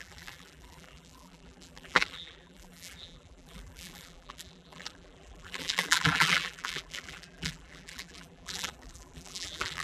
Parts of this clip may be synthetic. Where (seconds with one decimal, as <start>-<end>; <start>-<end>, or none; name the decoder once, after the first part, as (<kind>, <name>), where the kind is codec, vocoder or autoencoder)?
0.0-9.8 (vocoder, BigVGAN v2)